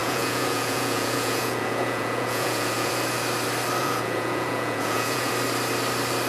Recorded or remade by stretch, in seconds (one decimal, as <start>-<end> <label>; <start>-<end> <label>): 0.0-2.9 remade; 2.9-3.8 recorded; 3.8-5.3 remade; 5.3-6.3 recorded